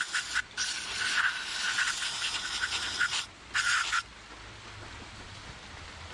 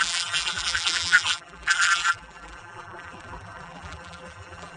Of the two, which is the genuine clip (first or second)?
first